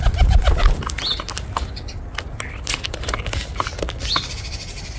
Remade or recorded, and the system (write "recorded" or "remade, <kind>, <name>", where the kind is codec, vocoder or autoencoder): recorded